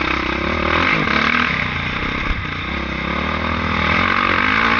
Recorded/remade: recorded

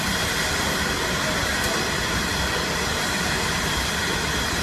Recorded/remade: recorded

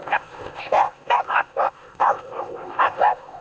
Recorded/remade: remade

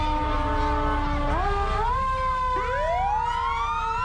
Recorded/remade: recorded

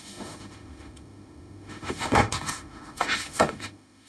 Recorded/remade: remade